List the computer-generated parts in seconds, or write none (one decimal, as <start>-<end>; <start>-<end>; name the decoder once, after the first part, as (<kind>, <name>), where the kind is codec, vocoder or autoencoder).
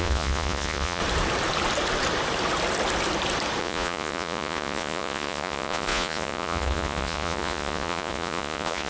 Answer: 0.0-1.0 (vocoder, Vocos); 3.6-8.9